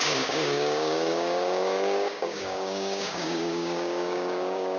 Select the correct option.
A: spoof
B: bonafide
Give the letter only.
A